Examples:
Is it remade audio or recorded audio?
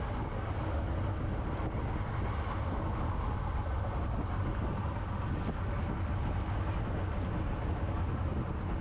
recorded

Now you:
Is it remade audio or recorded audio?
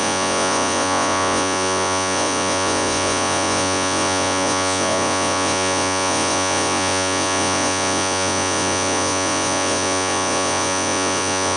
remade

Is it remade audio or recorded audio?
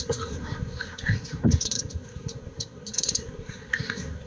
remade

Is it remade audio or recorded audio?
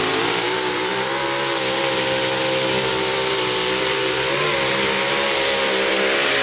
remade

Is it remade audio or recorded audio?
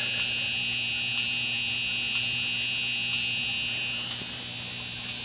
recorded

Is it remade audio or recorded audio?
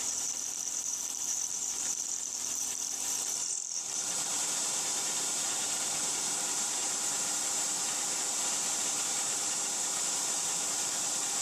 remade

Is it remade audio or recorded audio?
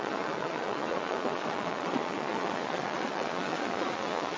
remade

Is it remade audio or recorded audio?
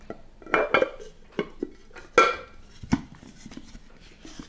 recorded